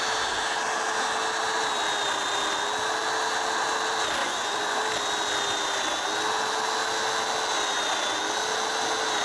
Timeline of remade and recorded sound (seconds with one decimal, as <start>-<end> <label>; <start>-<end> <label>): 0.0-4.2 recorded; 4.2-4.8 remade; 4.8-9.2 recorded